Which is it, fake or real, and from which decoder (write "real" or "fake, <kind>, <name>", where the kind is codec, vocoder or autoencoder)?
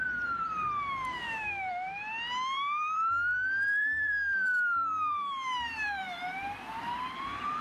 fake, vocoder, BigVGAN v2